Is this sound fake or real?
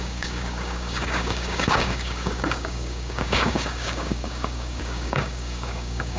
fake